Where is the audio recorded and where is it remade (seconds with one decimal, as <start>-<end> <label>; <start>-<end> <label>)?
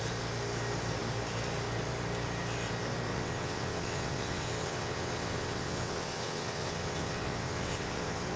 0.0-3.1 recorded; 3.1-8.4 remade